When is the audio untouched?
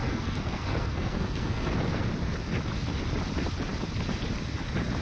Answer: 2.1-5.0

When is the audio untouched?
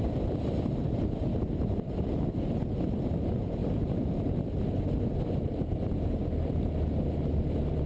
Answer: 0.0-7.9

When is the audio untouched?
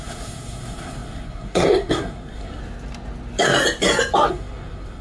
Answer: 2.6-4.3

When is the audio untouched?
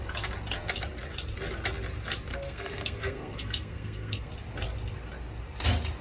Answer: 0.0-2.3; 4.3-6.0